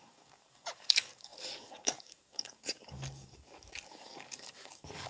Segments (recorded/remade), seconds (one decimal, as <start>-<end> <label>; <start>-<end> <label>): 0.0-5.1 remade